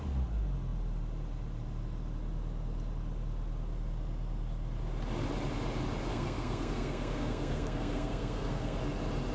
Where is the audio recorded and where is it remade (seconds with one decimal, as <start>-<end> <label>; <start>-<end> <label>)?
0.0-6.1 recorded; 6.1-8.8 remade; 8.8-9.3 recorded